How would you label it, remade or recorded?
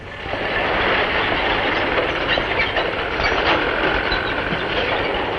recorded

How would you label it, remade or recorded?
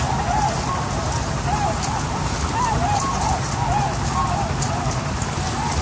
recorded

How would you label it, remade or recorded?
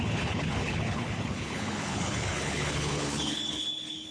remade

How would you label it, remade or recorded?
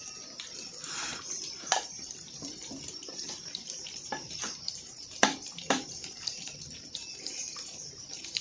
remade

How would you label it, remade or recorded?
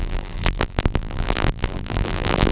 remade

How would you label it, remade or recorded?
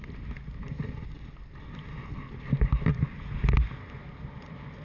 recorded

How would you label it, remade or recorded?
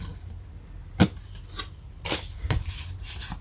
recorded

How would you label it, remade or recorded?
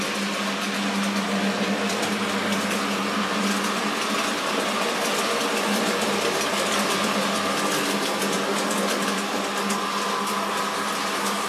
recorded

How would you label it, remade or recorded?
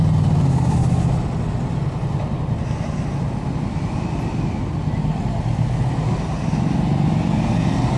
recorded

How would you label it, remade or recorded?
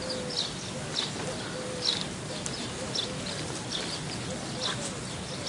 recorded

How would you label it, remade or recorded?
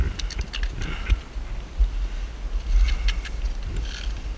recorded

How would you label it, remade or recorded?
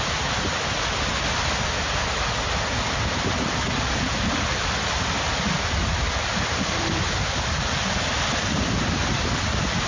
recorded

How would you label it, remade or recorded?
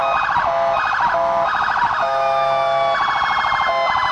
recorded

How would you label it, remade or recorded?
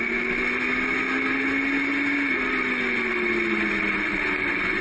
recorded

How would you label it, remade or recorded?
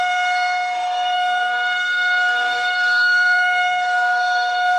remade